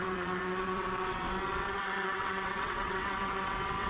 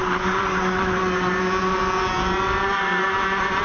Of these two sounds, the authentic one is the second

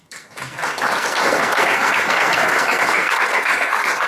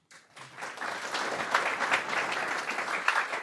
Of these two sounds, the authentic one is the second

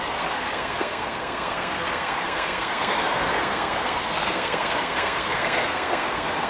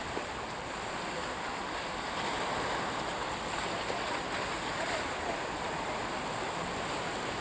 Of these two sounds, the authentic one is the second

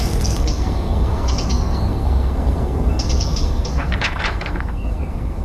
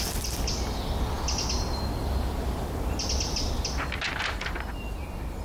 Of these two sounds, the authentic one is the second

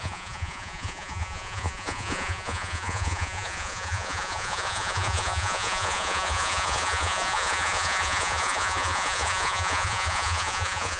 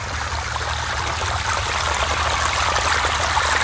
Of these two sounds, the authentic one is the second